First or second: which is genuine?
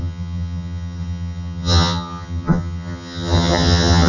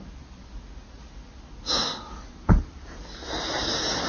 second